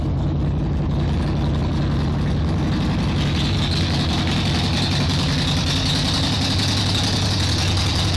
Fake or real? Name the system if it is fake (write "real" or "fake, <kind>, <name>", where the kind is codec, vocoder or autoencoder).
real